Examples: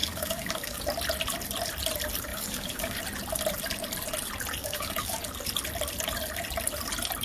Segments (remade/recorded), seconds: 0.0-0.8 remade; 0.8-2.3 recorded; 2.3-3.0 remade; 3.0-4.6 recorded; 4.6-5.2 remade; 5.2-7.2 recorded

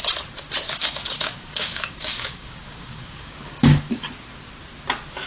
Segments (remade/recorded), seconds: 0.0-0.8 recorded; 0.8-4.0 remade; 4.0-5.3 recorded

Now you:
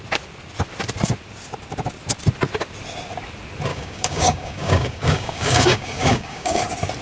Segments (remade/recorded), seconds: 0.0-3.7 recorded; 3.7-6.6 remade; 6.6-7.0 recorded

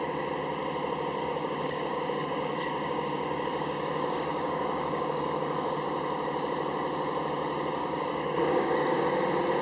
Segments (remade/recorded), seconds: 0.0-1.2 recorded; 1.2-5.8 remade; 5.8-7.8 recorded; 7.8-9.0 remade; 9.0-9.6 recorded

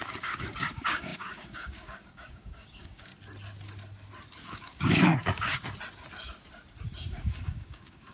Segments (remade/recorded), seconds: 0.0-3.1 remade; 3.1-4.4 recorded; 4.4-5.6 remade; 5.6-7.1 recorded; 7.1-8.1 remade

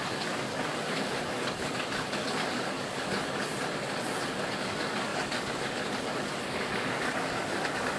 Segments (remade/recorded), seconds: 0.0-3.5 remade; 3.5-4.6 recorded; 4.6-8.0 remade

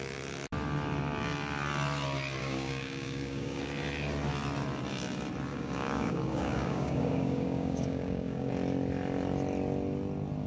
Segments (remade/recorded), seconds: 0.0-2.4 recorded; 2.4-3.6 remade; 3.6-5.5 recorded; 5.5-8.5 remade; 8.5-10.5 recorded

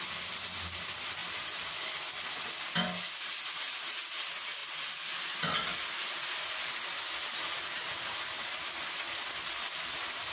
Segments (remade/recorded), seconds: 0.0-10.3 recorded